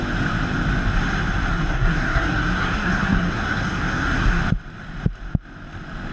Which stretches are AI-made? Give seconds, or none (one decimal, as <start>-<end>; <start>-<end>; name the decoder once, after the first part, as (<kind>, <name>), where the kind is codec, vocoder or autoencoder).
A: 1.5-4.4 (codec, SNAC)